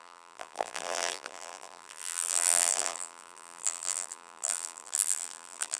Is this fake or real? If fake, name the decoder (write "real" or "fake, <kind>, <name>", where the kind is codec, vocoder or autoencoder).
fake, vocoder, BigVGAN v2